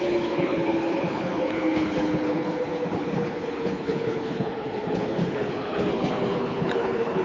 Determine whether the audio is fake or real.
fake